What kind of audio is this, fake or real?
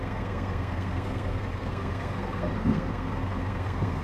fake